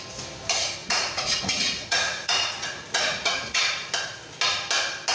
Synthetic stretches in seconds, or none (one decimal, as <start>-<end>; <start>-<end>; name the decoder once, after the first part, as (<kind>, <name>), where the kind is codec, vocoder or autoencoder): 0.8-3.9 (vocoder, Vocos)